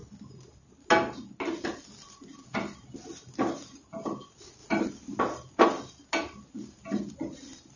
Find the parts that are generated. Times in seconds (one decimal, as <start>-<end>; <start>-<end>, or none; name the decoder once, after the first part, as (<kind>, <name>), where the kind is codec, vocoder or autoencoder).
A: 4.6-5.2 (vocoder, BigVGAN v2)